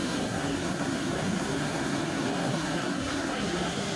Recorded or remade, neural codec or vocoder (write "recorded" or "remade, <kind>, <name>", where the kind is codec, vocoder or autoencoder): remade, codec, SNAC